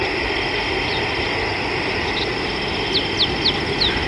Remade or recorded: recorded